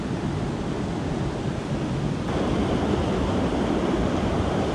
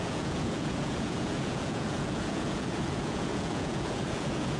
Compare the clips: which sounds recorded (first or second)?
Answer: first